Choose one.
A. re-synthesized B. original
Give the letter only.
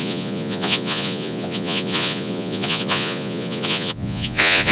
A